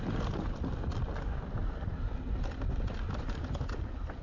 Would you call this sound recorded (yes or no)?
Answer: yes